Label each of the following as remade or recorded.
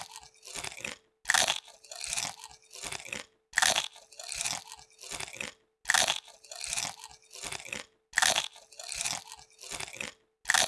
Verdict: recorded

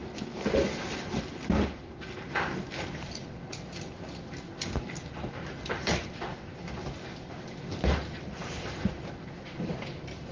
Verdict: recorded